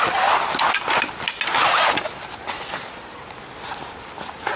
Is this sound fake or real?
real